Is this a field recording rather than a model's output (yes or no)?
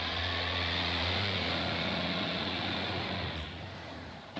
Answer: no